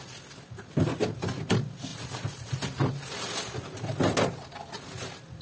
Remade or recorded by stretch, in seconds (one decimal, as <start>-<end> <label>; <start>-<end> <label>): 0.0-5.4 recorded